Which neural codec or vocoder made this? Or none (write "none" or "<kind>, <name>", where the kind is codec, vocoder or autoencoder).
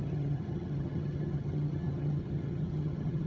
vocoder, HiFi-GAN